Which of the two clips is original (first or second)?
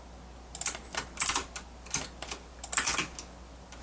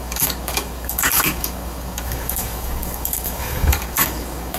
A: first